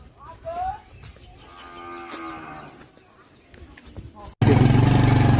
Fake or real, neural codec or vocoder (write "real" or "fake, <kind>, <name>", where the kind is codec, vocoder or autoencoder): real